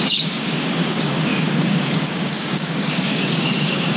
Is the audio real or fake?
fake